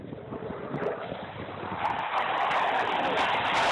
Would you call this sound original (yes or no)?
no